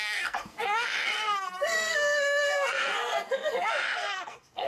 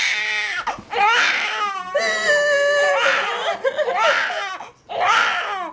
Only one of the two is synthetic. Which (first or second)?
first